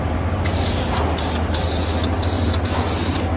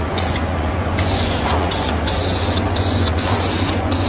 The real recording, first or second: first